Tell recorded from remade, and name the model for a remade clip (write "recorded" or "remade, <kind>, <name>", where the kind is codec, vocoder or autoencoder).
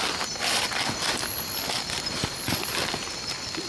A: recorded